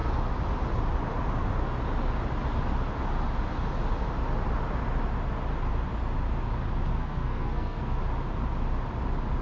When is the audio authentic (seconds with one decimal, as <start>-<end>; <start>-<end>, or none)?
0.0-6.9; 8.0-9.4

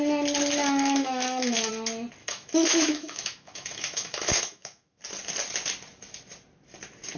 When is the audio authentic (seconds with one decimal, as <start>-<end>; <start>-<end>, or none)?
0.0-0.6; 1.7-2.2; 5.0-7.2

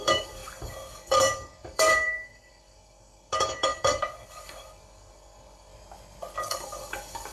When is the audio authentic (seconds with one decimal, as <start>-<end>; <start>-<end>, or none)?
5.7-6.4